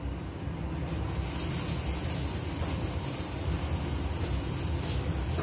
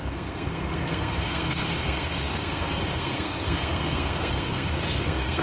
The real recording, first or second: first